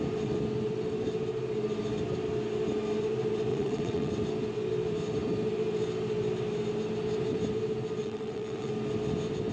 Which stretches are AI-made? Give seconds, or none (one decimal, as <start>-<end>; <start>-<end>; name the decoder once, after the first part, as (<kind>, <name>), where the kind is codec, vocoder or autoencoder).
3.5-4.1 (vocoder, WaveNeXt); 8.0-8.7